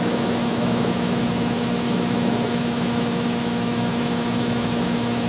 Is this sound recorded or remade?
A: remade